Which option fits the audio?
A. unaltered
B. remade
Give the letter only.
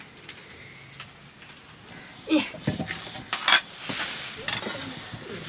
A